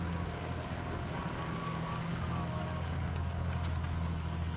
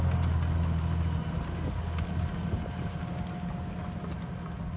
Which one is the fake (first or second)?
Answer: first